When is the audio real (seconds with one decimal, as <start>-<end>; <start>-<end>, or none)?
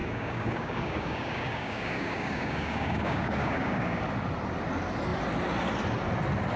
4.0-6.6